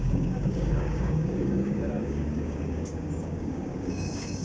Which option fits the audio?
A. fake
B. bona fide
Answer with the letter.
A